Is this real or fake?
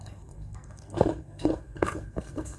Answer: fake